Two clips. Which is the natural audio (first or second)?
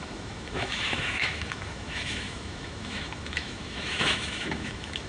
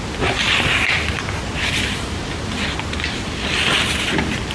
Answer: second